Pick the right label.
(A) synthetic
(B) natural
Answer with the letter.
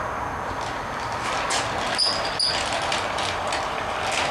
B